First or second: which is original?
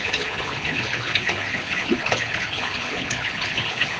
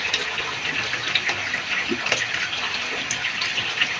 second